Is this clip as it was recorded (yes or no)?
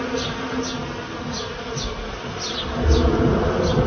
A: yes